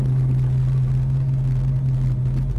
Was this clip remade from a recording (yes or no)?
no